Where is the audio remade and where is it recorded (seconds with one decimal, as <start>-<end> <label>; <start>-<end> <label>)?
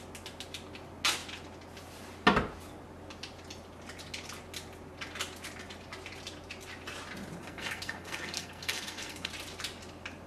0.0-7.4 recorded; 7.4-9.3 remade; 9.3-10.3 recorded